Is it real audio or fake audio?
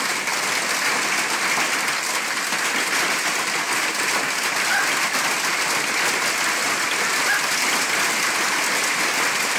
real